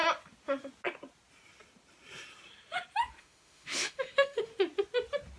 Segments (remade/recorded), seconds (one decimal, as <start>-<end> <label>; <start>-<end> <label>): 0.0-3.2 recorded; 3.2-4.5 remade; 4.5-5.4 recorded